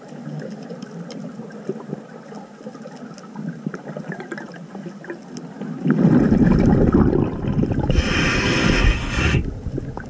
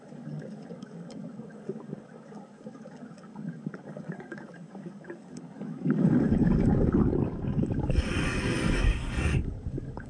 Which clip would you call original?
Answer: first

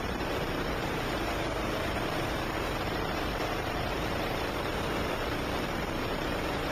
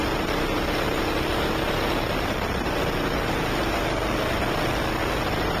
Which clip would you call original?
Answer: second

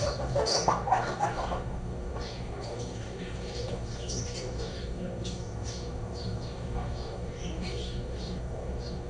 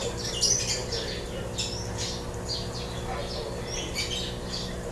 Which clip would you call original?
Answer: second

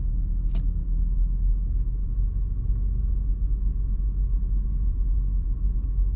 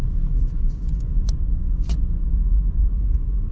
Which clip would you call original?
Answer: first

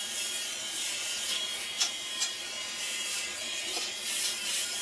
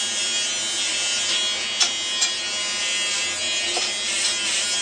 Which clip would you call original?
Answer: second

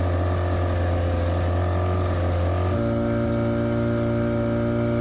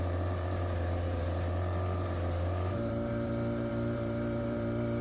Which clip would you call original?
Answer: first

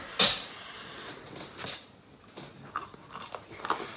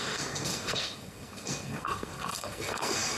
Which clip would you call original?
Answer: first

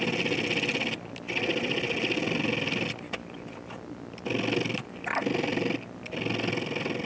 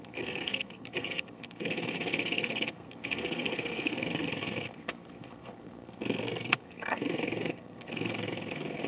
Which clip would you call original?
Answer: first